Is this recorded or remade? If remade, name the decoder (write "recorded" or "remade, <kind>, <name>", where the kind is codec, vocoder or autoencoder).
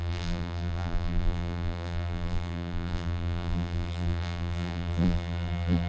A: remade, vocoder, BigVGAN v2